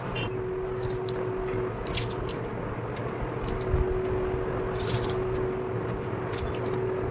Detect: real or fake real